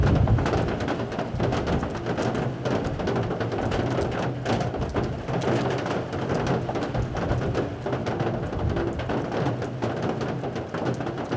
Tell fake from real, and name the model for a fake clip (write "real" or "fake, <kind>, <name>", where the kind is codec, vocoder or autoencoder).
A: real